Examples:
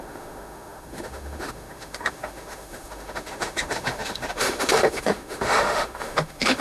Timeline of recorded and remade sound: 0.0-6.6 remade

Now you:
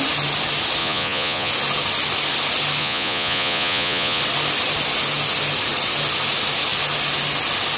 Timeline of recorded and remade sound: 0.0-0.8 recorded; 0.8-1.5 remade; 1.5-2.8 recorded; 2.8-4.2 remade; 4.2-7.8 recorded

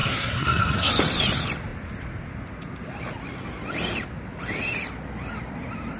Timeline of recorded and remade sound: 0.0-0.9 remade; 0.9-6.0 recorded